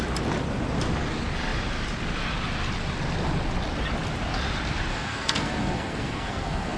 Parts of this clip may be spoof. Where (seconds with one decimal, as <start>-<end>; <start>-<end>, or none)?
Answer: 4.9-6.8